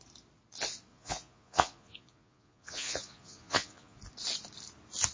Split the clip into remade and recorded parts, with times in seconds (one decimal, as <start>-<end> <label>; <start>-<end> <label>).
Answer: 0.0-0.9 recorded; 0.9-4.0 remade; 4.0-5.1 recorded